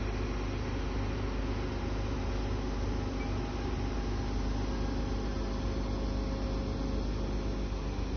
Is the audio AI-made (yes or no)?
no